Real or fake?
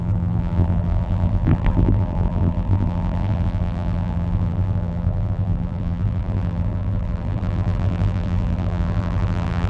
fake